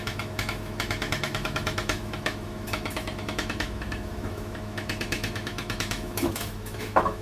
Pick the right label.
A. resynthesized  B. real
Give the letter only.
A